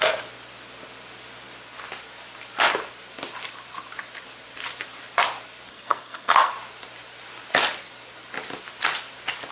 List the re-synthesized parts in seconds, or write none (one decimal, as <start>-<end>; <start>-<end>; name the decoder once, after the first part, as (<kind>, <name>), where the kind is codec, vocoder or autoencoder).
5.7-6.5 (codec, SNAC)